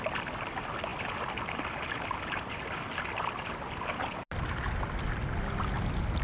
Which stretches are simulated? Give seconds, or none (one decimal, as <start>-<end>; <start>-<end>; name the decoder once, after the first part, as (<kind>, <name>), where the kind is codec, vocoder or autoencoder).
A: none